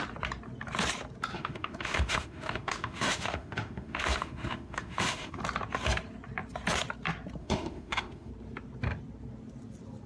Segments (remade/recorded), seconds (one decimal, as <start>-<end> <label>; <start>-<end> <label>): 0.0-1.3 recorded; 1.3-5.4 remade; 5.4-7.4 recorded; 7.4-8.3 remade; 8.3-10.1 recorded